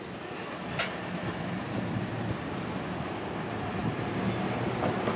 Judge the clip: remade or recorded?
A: recorded